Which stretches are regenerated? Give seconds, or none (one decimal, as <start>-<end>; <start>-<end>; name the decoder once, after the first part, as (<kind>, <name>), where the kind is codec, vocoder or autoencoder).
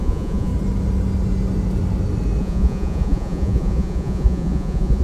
0.0-0.5 (vocoder, Vocos); 2.4-5.0